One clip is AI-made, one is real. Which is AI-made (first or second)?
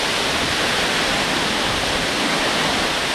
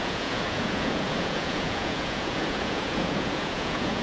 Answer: second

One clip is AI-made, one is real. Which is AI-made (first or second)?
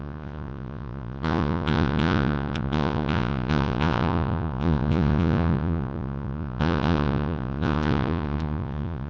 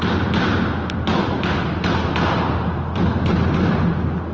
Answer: first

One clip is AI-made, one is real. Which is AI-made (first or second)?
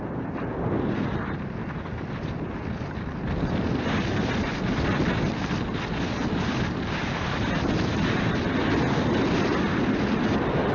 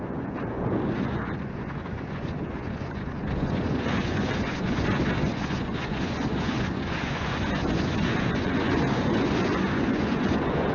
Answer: second